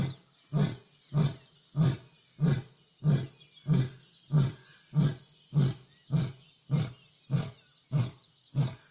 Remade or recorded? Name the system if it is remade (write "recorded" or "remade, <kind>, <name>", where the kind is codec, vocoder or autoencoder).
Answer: recorded